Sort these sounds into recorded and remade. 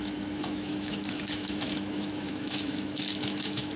remade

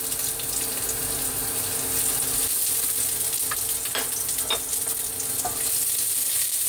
recorded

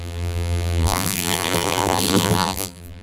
remade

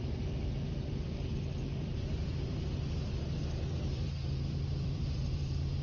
remade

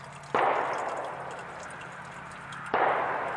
recorded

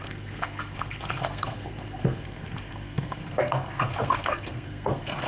remade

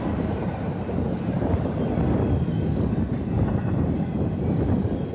recorded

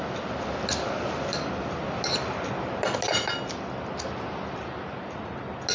recorded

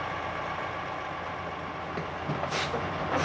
recorded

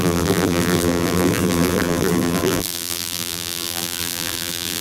remade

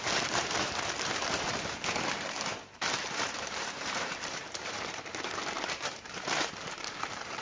remade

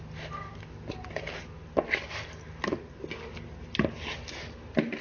recorded